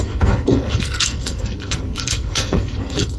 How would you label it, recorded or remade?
remade